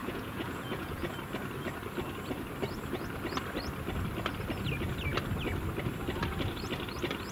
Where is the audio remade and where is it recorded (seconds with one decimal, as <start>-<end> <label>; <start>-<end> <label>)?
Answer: 0.0-1.1 remade; 1.1-7.3 recorded